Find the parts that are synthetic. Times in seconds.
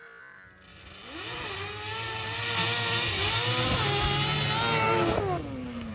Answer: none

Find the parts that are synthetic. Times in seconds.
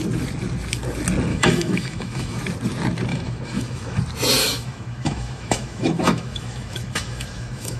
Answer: 1.3-2.4 (autoencoder, DAC-VAE); 3.1-4.0; 4.4-7.8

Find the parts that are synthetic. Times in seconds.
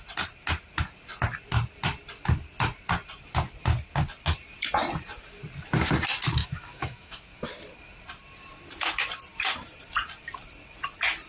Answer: 6.4-7.5 (autoencoder, DAC-VAE)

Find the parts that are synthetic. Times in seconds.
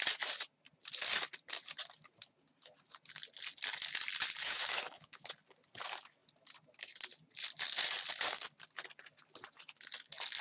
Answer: 4.4-5.3 (autoencoder, DAC-VAE)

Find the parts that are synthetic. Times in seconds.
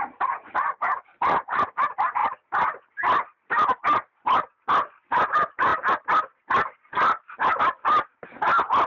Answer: none